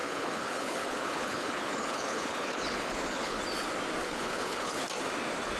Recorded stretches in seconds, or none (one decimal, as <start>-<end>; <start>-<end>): 3.4-4.0; 4.8-5.6